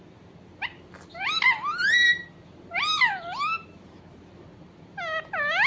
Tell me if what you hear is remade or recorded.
recorded